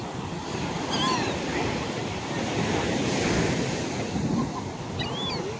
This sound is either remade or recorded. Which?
recorded